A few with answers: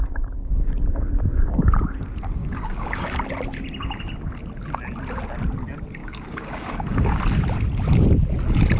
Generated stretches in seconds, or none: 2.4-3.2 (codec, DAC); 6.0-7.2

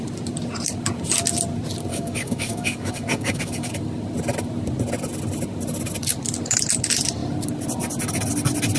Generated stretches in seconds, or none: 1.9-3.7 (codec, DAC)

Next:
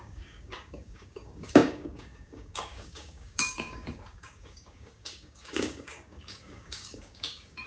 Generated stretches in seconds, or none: 0.0-7.7 (codec, DAC)

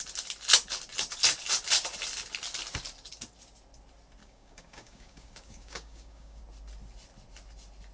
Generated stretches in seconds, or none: 4.2-6.4 (codec, DAC)

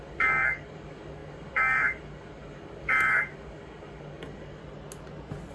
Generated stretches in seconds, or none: 0.0-4.6 (codec, DAC)

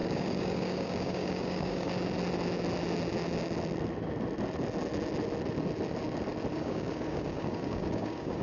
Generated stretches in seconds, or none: 0.0-1.9 (codec, DAC); 6.5-8.4

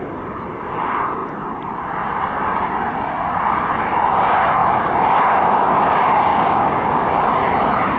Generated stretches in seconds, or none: 6.3-7.1 (codec, DAC)